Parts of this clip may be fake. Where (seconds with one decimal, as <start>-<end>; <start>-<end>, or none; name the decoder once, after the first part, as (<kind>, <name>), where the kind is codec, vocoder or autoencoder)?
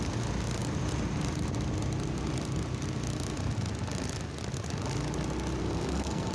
5.6-6.3 (codec, SNAC)